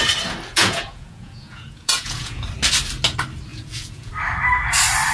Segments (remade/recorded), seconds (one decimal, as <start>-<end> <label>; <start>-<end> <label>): 0.0-0.5 recorded; 0.5-2.4 remade; 2.4-3.5 recorded; 3.5-4.1 remade; 4.1-5.1 recorded